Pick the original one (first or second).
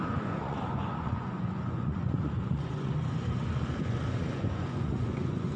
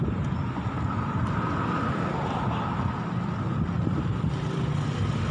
second